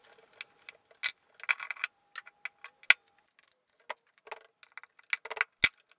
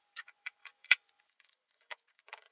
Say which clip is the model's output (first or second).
second